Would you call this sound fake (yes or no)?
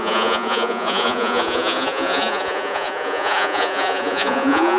yes